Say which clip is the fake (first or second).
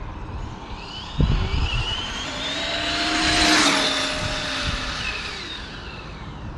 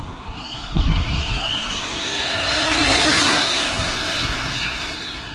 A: second